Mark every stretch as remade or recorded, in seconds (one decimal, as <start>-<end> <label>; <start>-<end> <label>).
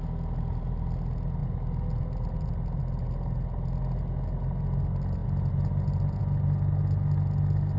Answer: 0.0-7.8 recorded